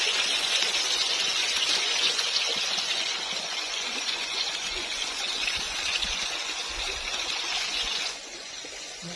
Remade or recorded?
remade